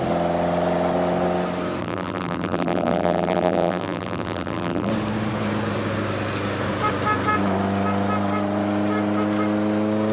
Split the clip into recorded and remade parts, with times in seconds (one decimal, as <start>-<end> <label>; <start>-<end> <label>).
0.0-1.8 recorded; 1.8-4.9 remade; 4.9-10.1 recorded